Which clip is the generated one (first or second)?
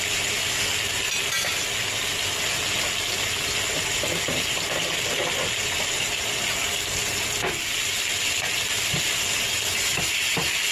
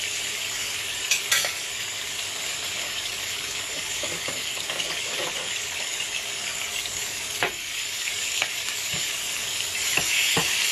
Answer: second